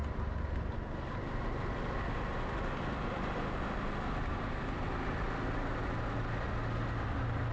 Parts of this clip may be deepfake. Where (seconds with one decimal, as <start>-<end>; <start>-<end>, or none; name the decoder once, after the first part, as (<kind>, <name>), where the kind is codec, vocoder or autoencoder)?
none